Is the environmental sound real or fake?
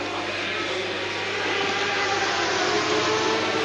real